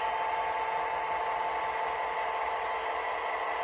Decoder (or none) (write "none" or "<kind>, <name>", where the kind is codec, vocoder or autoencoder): none